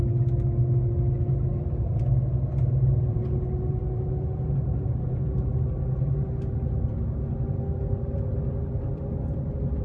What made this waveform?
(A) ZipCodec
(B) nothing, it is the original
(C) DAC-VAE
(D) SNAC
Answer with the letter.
B